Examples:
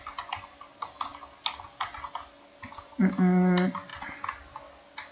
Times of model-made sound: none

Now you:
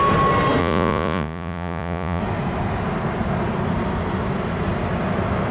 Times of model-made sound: 0.6-2.2 (vocoder, Vocos)

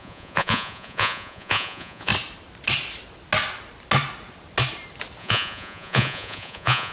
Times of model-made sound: 0.0-2.1 (vocoder, Vocos); 5.2-6.9

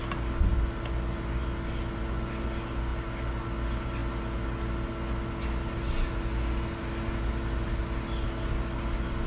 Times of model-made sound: none

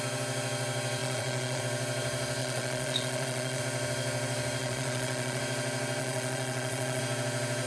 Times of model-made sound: 1.0-1.6 (vocoder, Vocos); 2.4-3.6; 4.6-5.4; 6.0-7.0

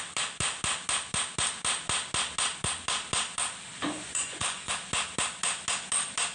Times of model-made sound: 3.8-4.7 (vocoder, Vocos)

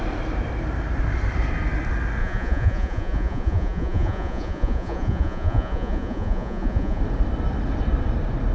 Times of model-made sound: 2.2-7.0 (vocoder, Vocos)